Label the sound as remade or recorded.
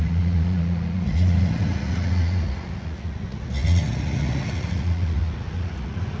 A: remade